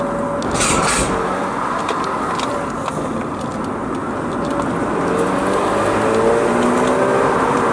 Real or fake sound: real